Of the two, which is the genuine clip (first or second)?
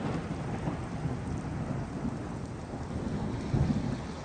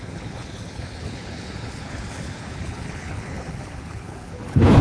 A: first